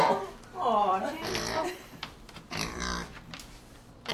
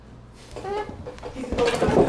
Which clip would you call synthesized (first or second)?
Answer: first